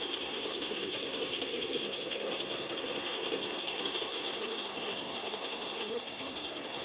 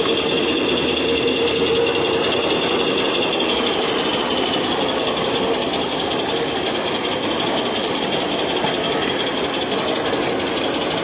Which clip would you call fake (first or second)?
first